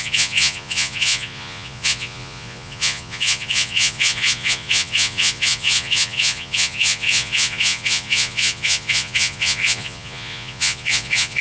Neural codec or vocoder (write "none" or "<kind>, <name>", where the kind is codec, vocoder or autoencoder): vocoder, Vocos